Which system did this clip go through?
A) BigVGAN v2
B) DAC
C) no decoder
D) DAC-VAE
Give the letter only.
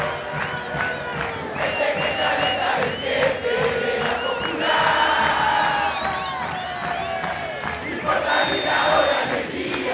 C